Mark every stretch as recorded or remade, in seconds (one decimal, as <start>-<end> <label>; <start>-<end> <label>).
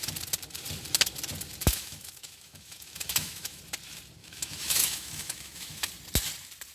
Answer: 0.0-1.6 recorded; 1.6-3.6 remade; 3.6-4.2 recorded; 4.2-5.9 remade; 5.9-6.7 recorded